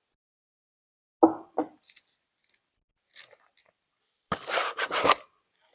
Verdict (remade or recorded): recorded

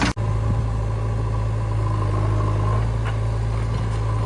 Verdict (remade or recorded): recorded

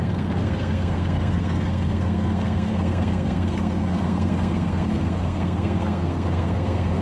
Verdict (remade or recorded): remade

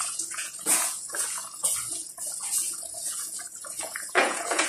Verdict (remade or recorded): remade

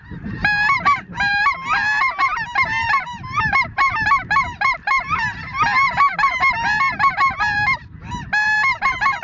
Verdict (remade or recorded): remade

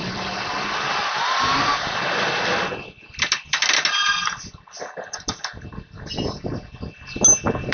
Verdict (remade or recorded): recorded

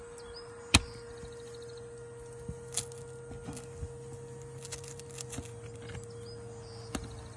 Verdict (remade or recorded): recorded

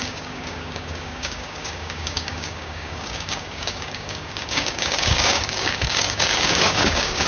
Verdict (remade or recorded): remade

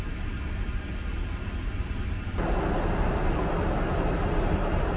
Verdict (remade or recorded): recorded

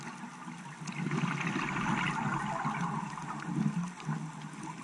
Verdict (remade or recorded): recorded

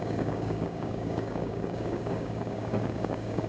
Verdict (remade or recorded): remade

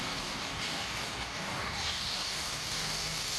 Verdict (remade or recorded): remade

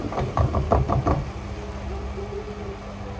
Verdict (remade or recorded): recorded